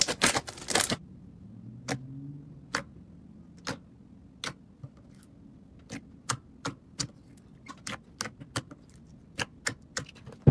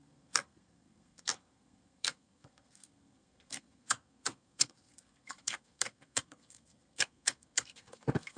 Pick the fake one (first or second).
second